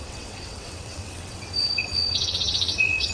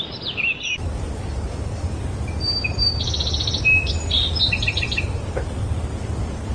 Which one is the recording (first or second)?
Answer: second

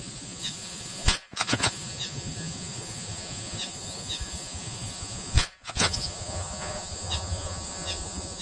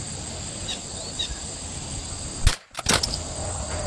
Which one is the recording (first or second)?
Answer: second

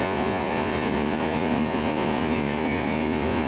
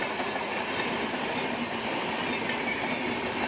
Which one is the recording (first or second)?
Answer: second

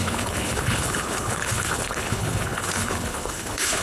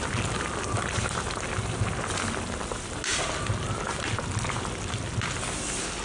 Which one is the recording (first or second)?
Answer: second